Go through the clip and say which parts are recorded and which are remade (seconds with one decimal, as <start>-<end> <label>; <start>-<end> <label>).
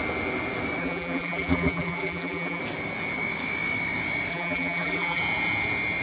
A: 0.0-0.8 recorded; 0.8-2.6 remade; 2.6-4.3 recorded; 4.3-5.2 remade; 5.2-6.0 recorded